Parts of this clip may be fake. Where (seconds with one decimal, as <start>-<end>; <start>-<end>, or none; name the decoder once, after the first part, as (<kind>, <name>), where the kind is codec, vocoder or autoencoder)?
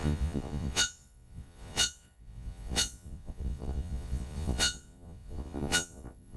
0.0-6.4 (vocoder, Vocos)